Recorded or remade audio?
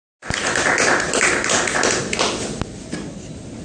recorded